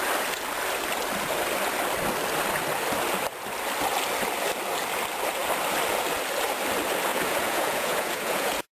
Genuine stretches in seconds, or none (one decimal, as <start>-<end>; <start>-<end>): 0.0-7.1